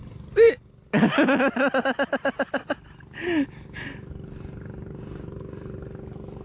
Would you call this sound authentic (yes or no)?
yes